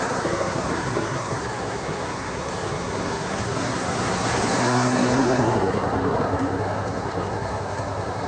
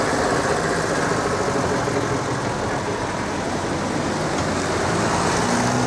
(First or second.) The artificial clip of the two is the first